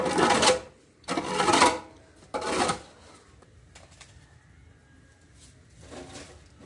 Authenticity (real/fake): real